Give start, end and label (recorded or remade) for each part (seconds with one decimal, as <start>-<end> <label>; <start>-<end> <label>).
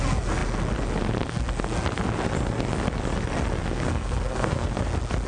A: 0.0-3.6 recorded; 3.6-4.8 remade; 4.8-5.3 recorded